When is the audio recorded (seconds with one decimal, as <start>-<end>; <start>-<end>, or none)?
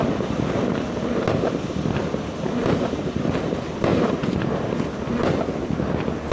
0.0-2.6; 3.2-3.9; 5.4-6.3